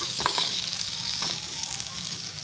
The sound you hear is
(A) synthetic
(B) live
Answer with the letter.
A